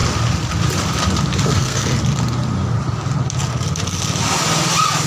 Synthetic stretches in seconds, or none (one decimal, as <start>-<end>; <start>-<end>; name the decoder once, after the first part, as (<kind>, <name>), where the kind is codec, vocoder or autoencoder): 1.4-1.9 (codec, SNAC)